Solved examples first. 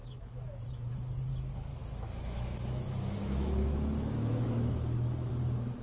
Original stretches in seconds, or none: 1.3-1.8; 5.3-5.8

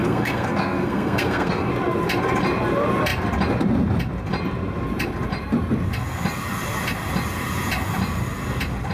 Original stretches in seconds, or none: 1.7-8.9

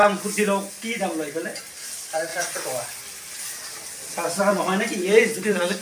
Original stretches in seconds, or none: 0.0-0.7; 2.3-4.4

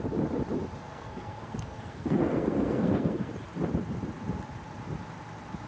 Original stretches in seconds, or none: 0.0-0.9; 3.3-5.7

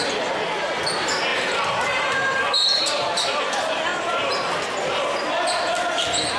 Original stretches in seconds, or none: 0.0-1.3; 3.4-6.4

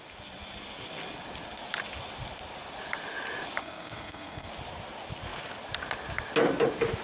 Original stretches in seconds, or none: 0.0-3.6; 4.5-7.0

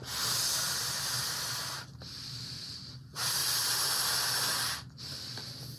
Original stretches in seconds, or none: 3.4-5.0

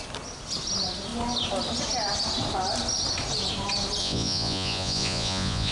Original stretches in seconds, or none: 0.0-4.0